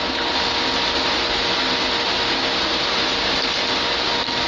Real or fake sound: real